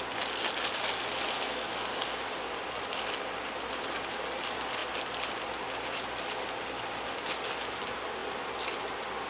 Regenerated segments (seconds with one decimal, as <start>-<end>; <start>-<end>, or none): none